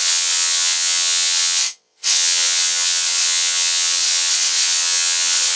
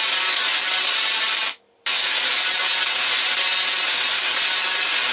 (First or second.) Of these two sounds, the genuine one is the second